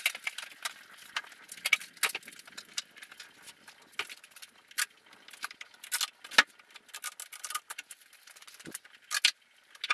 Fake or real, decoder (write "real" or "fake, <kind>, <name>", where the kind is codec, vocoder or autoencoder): real